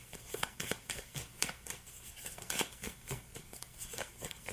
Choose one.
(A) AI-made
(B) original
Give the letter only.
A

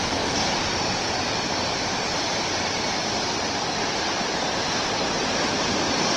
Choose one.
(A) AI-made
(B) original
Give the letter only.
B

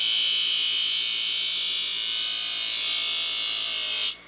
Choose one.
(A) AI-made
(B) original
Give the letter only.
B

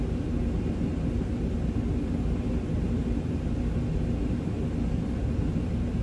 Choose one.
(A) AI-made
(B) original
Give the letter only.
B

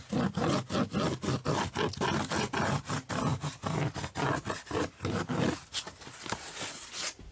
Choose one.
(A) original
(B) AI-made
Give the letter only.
A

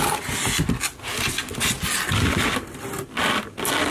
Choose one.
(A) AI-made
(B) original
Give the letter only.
B